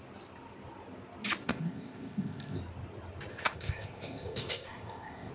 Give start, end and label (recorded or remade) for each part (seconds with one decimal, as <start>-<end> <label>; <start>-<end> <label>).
0.0-1.4 recorded; 1.4-2.6 remade; 2.6-3.3 recorded; 3.3-5.3 remade